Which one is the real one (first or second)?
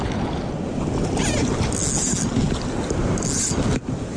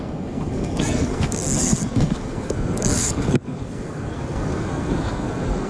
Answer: first